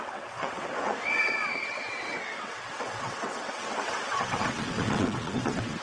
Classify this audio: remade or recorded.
remade